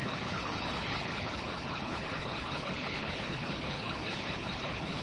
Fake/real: fake